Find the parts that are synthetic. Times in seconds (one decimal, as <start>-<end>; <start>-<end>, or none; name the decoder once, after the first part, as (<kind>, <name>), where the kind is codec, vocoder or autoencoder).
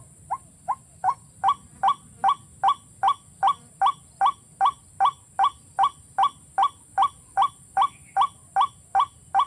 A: none